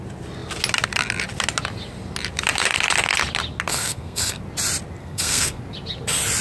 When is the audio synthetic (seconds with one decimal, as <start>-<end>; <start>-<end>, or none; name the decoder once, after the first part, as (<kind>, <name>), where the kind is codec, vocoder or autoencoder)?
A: 3.7-4.4 (codec, SNAC); 5.0-5.6